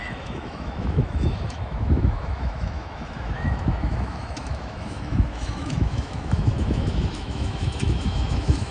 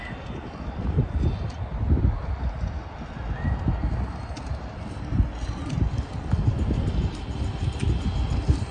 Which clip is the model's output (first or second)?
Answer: first